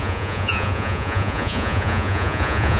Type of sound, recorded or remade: remade